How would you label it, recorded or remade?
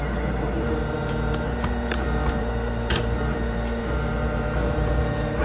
remade